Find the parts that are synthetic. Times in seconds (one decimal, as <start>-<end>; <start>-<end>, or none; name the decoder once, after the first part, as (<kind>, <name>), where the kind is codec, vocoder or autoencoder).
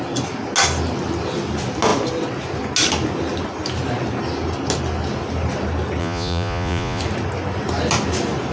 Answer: 6.0-7.0 (vocoder, Vocos)